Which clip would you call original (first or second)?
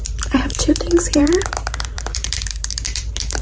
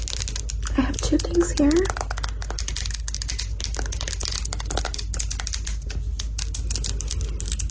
second